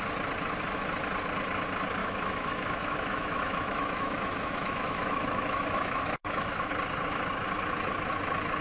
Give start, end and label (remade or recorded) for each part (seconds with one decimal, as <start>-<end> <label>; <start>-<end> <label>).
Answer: 0.0-2.0 recorded; 2.0-6.7 remade; 6.7-8.6 recorded